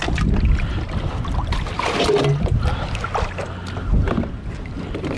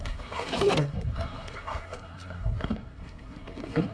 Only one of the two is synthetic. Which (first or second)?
second